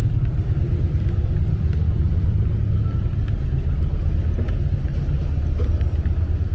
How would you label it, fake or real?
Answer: real